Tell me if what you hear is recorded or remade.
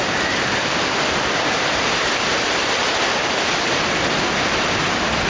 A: recorded